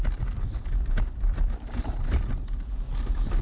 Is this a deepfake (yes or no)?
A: no